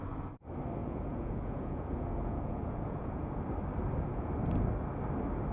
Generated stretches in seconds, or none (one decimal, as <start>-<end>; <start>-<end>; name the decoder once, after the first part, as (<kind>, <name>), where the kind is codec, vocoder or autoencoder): 0.8-3.3 (vocoder, Vocos)